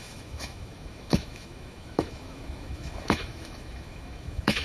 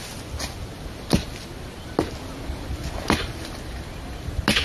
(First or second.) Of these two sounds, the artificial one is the first